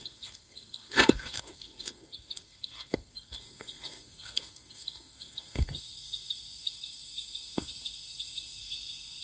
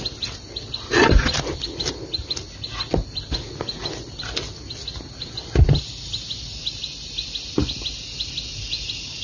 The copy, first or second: first